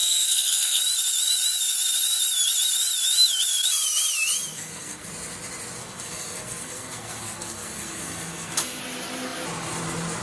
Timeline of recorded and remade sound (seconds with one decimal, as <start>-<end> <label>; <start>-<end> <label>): 0.0-0.8 remade; 0.8-4.5 recorded; 4.5-5.1 remade; 5.1-5.8 recorded; 5.8-8.8 remade; 8.8-10.2 recorded